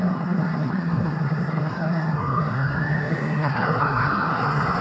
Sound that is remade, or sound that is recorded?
remade